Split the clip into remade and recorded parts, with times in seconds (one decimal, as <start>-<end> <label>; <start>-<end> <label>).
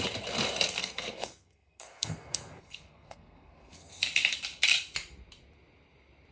0.0-0.8 recorded; 0.8-4.0 remade; 4.0-6.3 recorded